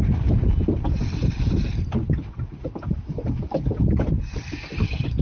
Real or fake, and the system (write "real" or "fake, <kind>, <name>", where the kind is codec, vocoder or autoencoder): real